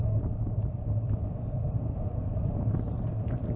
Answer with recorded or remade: recorded